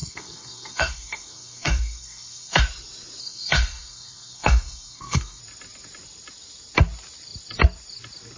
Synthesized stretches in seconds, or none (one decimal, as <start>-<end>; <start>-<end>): 0.0-2.6; 3.2-5.4